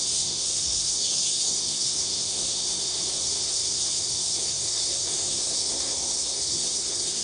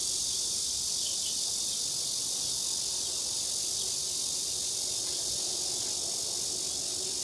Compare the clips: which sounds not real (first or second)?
first